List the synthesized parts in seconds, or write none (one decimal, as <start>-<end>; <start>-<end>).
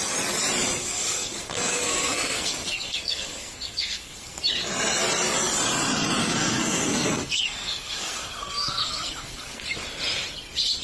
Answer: 0.8-4.4; 6.2-9.6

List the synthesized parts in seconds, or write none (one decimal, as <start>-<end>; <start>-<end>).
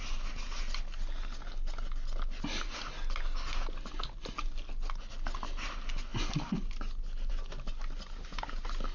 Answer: none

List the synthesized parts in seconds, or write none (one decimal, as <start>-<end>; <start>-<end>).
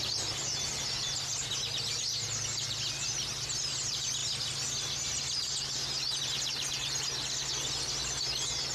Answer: none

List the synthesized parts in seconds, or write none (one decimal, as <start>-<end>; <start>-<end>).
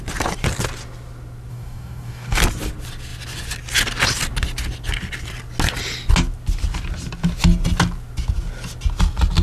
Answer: 1.5-2.4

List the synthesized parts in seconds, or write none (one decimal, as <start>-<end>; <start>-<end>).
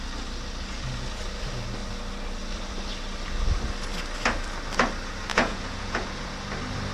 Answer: 5.3-6.3